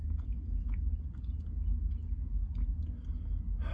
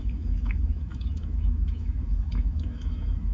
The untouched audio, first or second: first